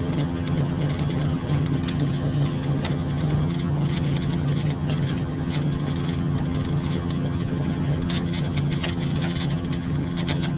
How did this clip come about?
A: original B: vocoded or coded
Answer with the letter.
B